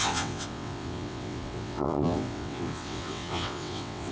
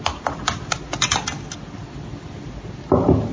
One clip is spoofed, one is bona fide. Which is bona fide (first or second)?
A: second